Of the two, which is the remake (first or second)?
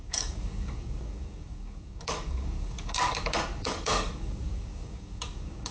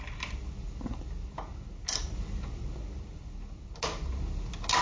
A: first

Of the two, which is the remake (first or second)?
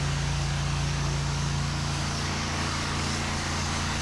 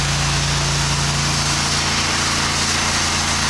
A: first